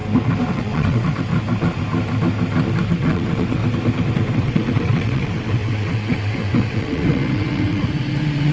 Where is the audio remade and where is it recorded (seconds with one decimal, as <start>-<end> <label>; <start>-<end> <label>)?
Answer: 0.0-0.5 recorded; 0.5-1.3 remade; 1.3-2.9 recorded; 2.9-3.6 remade; 3.6-4.3 recorded; 4.3-8.5 remade